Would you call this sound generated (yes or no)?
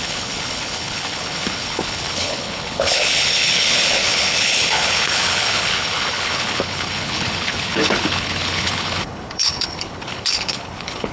yes